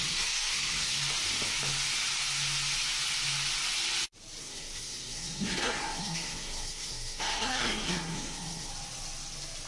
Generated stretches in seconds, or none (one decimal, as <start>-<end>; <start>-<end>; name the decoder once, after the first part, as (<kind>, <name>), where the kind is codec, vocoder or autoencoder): 0.0-1.0 (codec, SNAC); 4.4-8.7